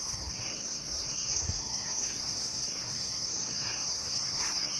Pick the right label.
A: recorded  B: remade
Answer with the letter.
B